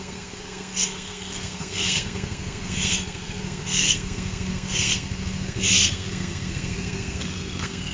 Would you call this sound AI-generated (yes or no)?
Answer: yes